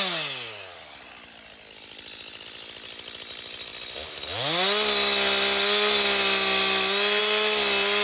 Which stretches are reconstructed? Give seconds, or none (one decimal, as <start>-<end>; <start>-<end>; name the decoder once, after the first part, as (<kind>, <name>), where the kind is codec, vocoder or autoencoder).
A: none